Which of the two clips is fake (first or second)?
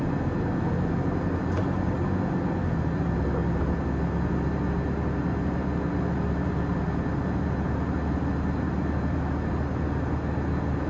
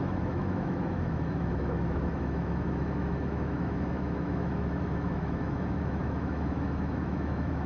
second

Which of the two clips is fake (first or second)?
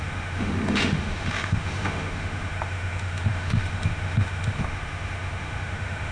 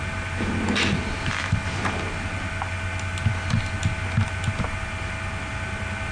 first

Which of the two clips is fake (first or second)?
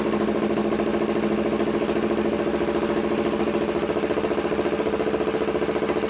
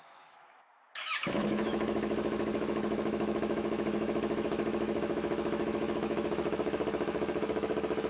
second